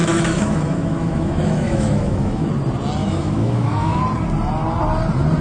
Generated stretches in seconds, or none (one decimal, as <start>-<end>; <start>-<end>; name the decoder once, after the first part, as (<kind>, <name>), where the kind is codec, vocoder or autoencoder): 0.0-2.5 (autoencoder, DAC-VAE); 3.0-4.0